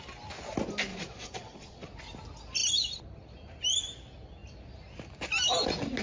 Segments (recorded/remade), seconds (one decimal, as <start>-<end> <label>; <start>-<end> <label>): 0.0-0.9 recorded; 0.9-1.9 remade; 1.9-6.0 recorded